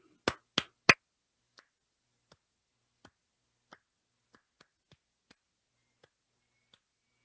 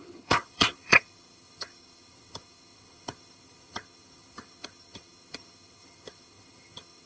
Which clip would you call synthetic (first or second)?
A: second